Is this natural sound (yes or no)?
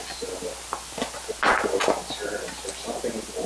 yes